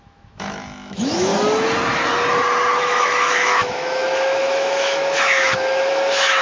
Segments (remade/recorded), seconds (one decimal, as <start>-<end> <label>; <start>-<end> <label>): 0.0-1.3 remade; 1.3-2.8 recorded; 2.8-6.4 remade